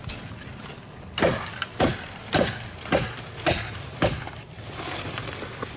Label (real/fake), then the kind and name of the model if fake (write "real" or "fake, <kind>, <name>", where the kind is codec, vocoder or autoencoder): real